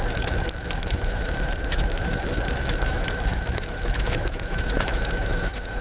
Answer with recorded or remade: remade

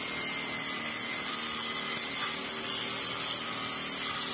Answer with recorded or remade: recorded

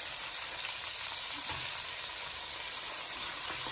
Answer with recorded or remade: recorded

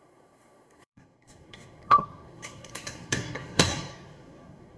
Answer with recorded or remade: remade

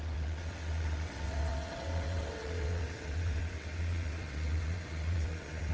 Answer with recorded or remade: remade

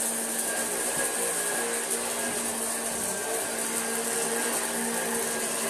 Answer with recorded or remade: recorded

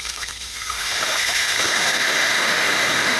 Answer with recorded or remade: remade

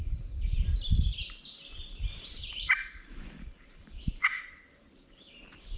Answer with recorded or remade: remade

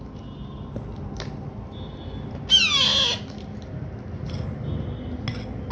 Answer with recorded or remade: recorded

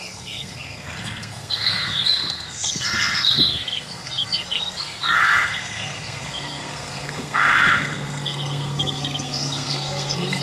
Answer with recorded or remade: remade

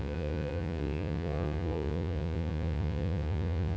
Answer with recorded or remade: remade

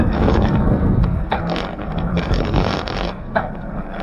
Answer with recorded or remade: remade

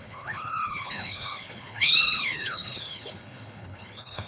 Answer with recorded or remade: remade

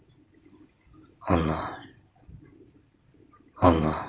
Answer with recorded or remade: recorded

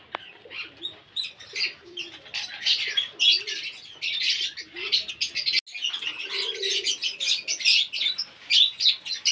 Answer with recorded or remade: recorded